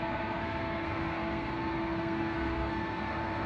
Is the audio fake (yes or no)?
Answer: yes